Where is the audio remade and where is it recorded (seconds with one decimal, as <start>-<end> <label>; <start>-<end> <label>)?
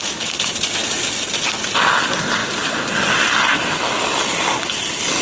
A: 0.0-5.2 recorded